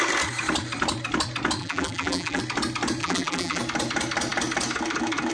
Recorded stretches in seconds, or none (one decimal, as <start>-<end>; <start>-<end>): 0.0-1.6; 2.4-3.0; 3.6-5.3